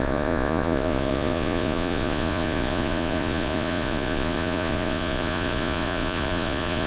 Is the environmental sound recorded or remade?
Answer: remade